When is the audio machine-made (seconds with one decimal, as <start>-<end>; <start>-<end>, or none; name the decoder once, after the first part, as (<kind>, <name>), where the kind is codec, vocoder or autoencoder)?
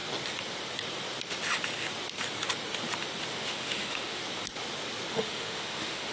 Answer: 3.3-4.2 (autoencoder, DAC-VAE); 5.1-6.1